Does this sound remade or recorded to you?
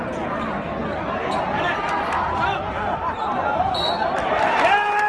recorded